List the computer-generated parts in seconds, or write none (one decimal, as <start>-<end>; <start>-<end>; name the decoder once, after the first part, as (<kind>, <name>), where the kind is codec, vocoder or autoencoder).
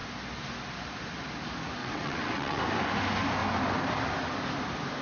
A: 1.8-2.6 (vocoder, WaveNeXt)